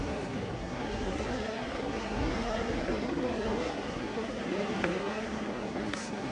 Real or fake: fake